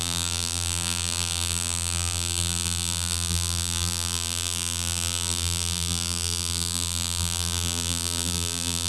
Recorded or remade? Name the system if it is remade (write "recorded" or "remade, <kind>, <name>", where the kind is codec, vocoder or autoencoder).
remade, vocoder, BigVGAN v2